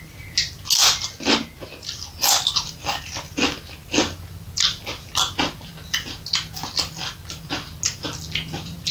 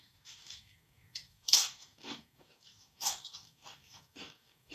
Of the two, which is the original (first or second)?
first